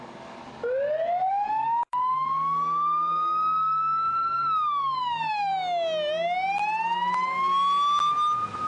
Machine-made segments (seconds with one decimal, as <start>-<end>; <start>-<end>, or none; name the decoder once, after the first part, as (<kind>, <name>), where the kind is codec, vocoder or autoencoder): 0.0-0.4 (codec, DAC); 1.3-5.5